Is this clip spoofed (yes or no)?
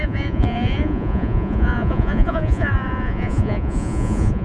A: yes